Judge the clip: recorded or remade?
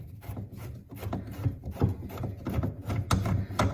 recorded